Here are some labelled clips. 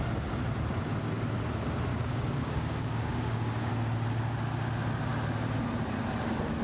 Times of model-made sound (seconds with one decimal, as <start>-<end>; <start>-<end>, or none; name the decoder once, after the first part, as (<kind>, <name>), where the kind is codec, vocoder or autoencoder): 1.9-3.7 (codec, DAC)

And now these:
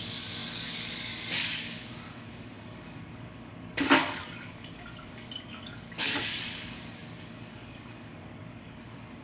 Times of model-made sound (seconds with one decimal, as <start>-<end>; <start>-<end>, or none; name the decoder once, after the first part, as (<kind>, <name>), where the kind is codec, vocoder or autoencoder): 0.0-9.2 (codec, DAC)

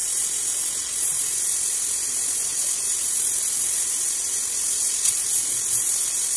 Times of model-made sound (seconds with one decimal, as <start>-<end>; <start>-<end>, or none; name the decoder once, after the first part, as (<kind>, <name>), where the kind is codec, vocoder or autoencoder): none

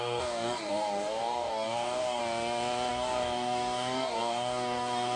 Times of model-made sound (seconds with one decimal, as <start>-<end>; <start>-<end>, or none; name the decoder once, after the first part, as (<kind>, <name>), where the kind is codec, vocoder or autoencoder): 0.0-2.2 (codec, DAC); 2.9-5.2

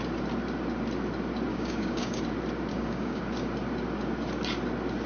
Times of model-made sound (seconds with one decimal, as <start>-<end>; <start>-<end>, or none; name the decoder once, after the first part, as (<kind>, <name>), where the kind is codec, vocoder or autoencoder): 1.5-2.2 (codec, DAC); 2.7-3.2

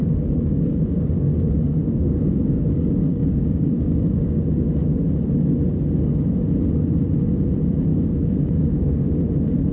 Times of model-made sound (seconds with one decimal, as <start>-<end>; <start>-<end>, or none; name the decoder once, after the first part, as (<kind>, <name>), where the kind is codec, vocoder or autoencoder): 0.0-4.4 (codec, DAC); 7.9-9.2

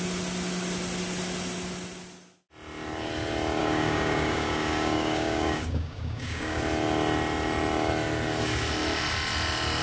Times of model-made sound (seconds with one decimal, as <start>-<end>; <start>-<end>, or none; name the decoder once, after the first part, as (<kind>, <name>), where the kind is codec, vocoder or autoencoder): 3.6-6.6 (codec, DAC)

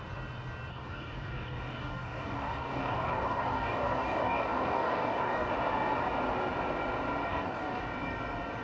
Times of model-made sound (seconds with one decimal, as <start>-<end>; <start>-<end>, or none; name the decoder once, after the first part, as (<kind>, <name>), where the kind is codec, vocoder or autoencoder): 0.7-5.5 (codec, DAC); 7.3-7.8